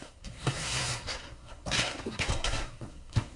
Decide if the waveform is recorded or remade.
remade